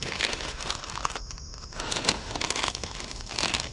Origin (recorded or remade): remade